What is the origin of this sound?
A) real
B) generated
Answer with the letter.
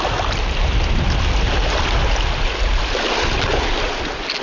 A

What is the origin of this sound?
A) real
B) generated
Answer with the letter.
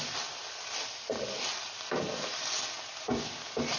A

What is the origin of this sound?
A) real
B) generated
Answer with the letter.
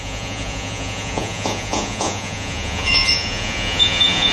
B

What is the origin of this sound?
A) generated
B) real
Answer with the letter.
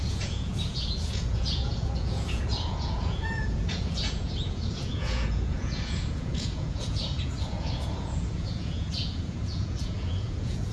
A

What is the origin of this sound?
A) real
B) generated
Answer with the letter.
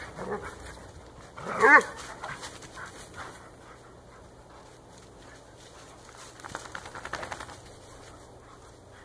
A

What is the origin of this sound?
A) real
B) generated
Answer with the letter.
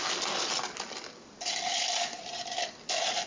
A